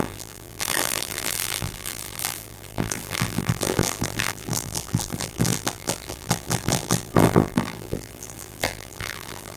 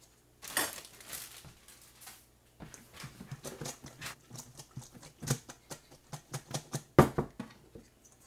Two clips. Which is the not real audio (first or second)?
first